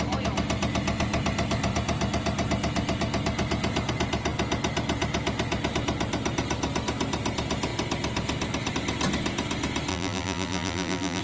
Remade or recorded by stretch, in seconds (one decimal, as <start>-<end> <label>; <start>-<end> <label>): 0.0-9.9 recorded; 9.9-11.2 remade